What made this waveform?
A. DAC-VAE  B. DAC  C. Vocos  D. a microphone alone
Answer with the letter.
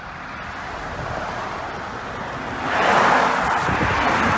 D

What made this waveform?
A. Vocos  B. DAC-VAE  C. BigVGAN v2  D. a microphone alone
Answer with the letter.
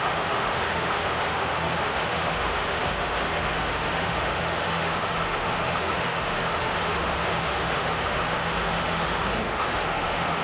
B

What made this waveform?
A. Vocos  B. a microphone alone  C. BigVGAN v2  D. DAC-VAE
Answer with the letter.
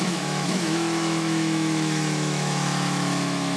D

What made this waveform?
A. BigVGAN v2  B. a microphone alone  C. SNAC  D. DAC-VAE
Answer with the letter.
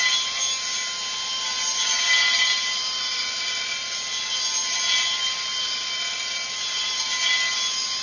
B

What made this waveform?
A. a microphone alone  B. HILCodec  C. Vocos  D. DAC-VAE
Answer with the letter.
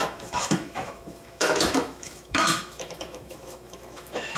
D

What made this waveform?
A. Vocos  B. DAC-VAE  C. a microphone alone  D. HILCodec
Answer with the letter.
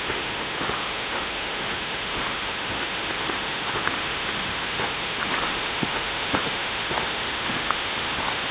B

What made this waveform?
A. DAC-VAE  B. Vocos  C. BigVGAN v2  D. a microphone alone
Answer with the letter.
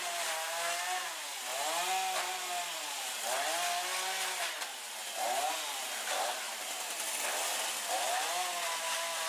D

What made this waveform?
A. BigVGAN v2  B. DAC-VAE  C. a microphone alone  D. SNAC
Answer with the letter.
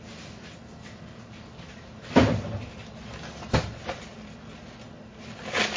C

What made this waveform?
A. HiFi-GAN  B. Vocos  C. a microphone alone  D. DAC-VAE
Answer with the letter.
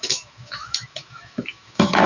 D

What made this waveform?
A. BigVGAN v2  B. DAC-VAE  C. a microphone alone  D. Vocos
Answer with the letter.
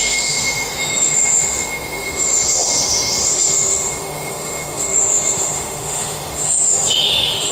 B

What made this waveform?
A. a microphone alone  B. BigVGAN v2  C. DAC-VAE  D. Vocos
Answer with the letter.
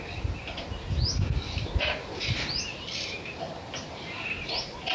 A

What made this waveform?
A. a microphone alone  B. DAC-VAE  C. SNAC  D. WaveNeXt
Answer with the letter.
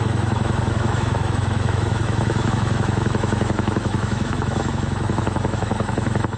B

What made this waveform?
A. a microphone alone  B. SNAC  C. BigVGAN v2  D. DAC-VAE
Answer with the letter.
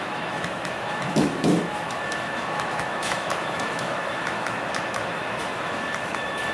D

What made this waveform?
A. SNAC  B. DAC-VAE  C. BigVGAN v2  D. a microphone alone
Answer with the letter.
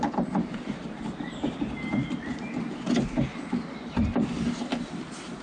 D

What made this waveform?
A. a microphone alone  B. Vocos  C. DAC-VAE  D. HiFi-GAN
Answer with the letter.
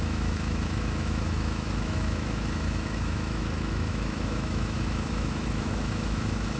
C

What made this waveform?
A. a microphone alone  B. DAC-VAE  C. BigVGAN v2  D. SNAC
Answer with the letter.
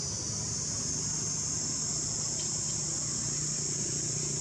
A